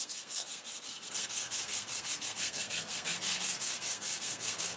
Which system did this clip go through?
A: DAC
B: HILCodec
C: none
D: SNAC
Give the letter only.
D